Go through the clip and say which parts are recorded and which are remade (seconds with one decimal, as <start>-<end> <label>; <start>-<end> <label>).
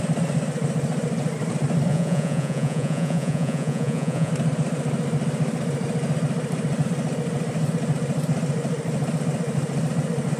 0.0-1.9 recorded; 1.9-4.3 remade; 4.3-10.4 recorded